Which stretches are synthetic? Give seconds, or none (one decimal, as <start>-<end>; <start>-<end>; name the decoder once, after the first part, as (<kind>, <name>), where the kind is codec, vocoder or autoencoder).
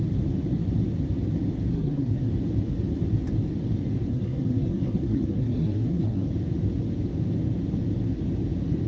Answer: 1.7-2.3 (codec, SNAC); 4.1-6.3